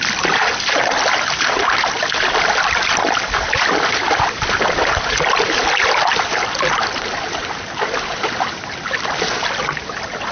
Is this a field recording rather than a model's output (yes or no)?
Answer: yes